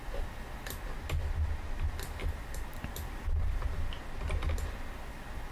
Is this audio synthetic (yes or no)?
no